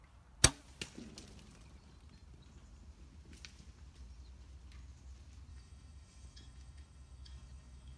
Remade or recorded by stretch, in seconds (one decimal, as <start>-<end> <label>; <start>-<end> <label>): 0.0-5.5 recorded; 5.5-8.0 remade